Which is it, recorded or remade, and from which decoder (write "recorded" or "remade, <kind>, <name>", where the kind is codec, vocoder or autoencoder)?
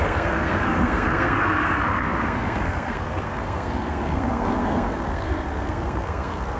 remade, codec, SNAC